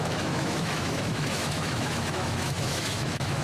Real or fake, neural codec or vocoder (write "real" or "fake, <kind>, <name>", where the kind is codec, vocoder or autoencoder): fake, autoencoder, DAC-VAE